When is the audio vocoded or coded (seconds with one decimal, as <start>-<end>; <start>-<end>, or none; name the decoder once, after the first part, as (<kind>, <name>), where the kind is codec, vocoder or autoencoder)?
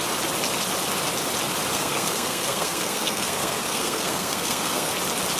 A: 1.7-4.9 (codec, SNAC)